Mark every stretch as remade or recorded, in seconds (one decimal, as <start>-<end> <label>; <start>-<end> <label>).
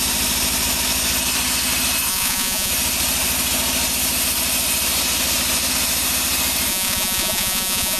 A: 0.0-2.1 recorded; 2.1-2.7 remade; 2.7-6.7 recorded; 6.7-8.0 remade